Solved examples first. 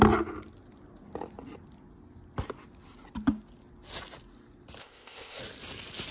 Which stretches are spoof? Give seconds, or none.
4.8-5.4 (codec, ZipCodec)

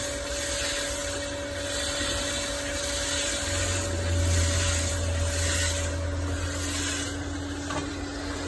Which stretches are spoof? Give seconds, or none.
none